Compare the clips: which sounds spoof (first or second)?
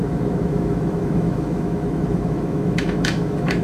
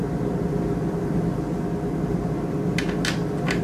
first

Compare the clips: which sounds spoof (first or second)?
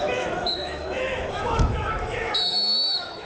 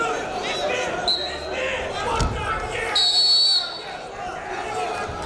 first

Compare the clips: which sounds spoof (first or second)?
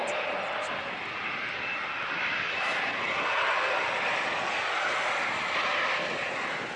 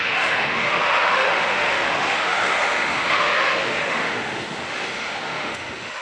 second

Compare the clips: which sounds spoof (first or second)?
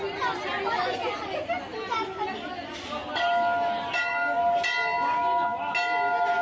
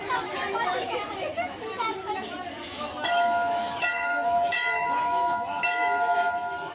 second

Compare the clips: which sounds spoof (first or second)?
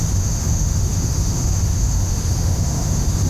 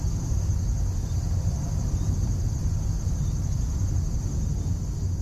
first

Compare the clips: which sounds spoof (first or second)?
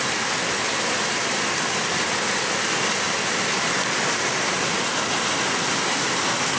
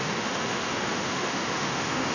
second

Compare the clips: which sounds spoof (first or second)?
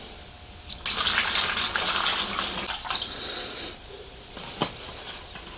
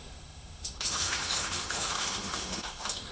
second